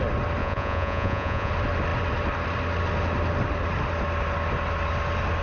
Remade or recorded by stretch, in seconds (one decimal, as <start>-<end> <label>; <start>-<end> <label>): 0.0-0.4 recorded; 0.4-1.5 remade; 1.5-5.4 recorded